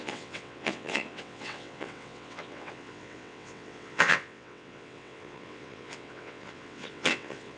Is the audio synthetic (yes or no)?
yes